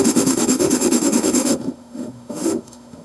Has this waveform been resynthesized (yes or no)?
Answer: yes